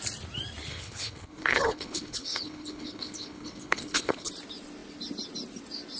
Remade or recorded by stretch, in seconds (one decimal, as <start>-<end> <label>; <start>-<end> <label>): 0.0-0.7 recorded; 0.7-4.3 remade; 4.3-6.0 recorded